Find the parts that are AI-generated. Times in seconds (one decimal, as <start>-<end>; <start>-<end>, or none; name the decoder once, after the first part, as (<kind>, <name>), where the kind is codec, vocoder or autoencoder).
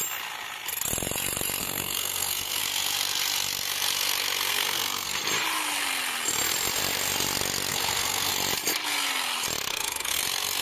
1.6-2.6 (codec, SNAC); 4.5-5.2; 7.7-8.3; 9.7-10.2